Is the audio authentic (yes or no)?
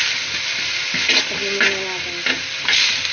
yes